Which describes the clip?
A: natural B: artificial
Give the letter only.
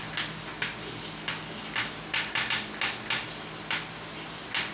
A